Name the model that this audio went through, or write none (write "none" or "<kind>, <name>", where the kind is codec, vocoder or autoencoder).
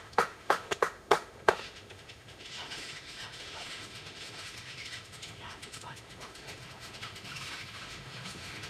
autoencoder, DAC-VAE